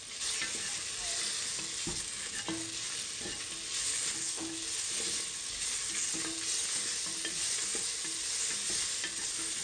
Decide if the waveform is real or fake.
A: real